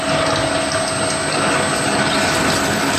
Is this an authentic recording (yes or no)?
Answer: yes